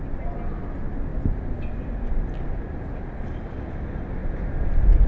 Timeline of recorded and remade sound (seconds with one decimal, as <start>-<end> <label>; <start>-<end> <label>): 0.0-5.1 recorded